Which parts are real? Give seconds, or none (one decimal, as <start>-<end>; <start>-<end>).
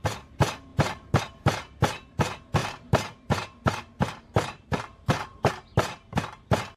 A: 0.0-0.7; 1.2-2.6; 5.5-6.8